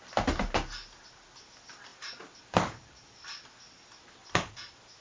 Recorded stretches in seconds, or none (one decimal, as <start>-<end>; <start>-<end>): 0.0-5.0